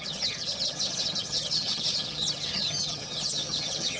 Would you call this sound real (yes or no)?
no